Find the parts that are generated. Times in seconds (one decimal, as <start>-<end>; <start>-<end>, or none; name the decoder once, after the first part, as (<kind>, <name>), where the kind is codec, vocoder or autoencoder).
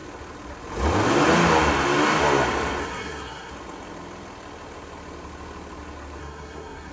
2.8-3.5 (codec, SNAC); 6.2-6.9